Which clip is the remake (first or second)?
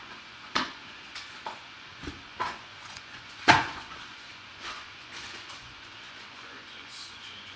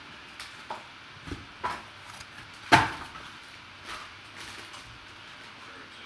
first